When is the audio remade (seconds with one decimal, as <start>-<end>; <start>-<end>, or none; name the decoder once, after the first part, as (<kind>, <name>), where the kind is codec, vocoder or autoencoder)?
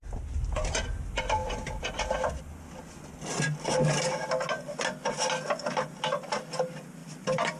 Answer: 1.4-2.4 (vocoder, BigVGAN v2); 7.0-7.6